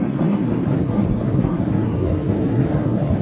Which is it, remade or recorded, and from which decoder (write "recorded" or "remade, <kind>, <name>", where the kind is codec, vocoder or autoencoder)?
remade, codec, SNAC